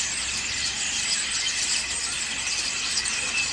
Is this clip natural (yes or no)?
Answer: yes